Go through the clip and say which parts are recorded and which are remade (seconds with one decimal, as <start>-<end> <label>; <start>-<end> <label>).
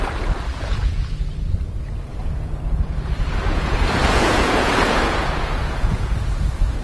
0.0-0.5 recorded; 0.5-1.1 remade; 1.1-2.2 recorded; 2.2-6.3 remade; 6.3-6.8 recorded